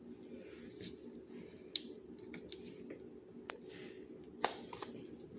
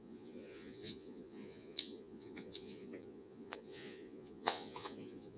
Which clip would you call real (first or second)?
first